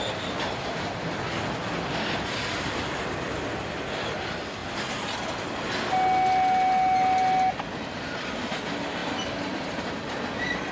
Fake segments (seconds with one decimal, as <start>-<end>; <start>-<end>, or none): none